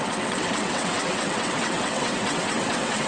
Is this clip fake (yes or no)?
yes